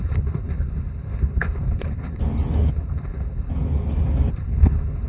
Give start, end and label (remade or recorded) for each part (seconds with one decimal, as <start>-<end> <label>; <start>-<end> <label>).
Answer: 0.0-2.2 remade; 2.2-2.7 recorded; 2.7-3.5 remade; 3.5-4.3 recorded; 4.3-5.1 remade

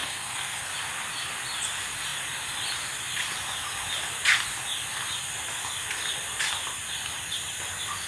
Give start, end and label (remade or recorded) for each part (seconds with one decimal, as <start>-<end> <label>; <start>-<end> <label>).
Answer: 0.0-0.7 remade; 0.7-8.1 recorded